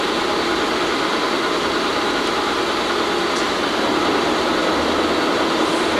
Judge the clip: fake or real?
real